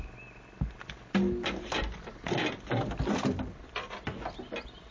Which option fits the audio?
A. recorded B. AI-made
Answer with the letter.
A